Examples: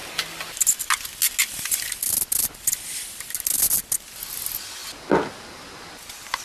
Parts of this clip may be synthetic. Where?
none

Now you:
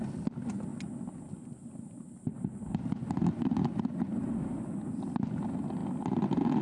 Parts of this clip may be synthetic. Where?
none

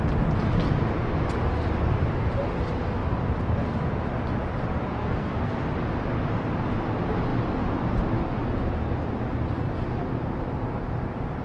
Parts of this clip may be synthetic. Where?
5.0-5.5 (codec, SNAC)

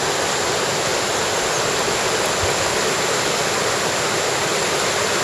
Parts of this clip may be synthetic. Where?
none

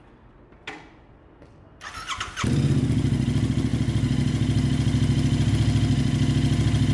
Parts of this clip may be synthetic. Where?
none

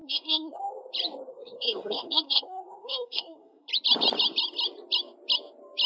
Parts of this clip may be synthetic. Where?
0.0-0.6 (codec, SNAC); 1.3-3.7

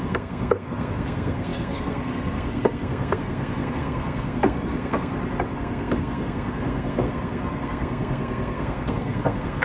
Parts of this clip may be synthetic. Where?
0.0-5.1 (codec, SNAC); 5.6-9.6

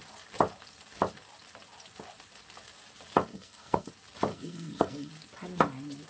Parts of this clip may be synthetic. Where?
3.3-3.9 (codec, SNAC); 4.3-5.1